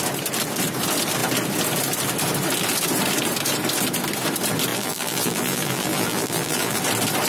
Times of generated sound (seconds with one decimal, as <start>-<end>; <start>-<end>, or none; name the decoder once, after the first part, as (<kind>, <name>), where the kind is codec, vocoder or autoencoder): 4.7-6.8 (vocoder, BigVGAN v2)